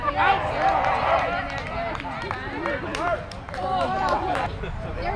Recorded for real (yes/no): yes